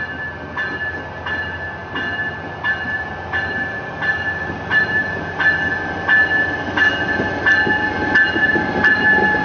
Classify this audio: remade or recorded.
recorded